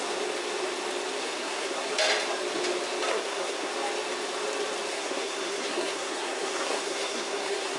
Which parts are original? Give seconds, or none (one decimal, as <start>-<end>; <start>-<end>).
0.0-1.2; 1.9-3.1; 3.7-4.9